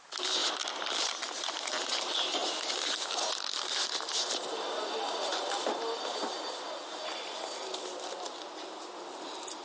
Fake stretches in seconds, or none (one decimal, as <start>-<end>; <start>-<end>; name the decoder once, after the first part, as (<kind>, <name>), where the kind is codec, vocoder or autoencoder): none